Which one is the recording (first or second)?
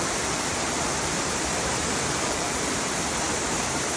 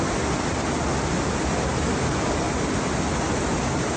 second